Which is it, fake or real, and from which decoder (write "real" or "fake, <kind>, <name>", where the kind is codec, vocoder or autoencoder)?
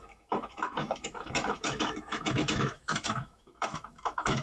fake, autoencoder, DAC-VAE